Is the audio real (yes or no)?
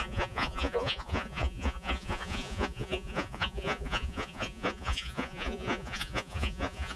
no